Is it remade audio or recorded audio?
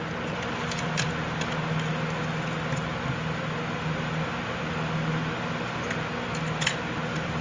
recorded